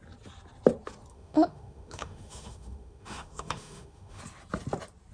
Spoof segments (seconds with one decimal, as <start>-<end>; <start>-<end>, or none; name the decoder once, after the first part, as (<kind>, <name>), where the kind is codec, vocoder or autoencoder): 1.1-4.2 (autoencoder, DAC-VAE)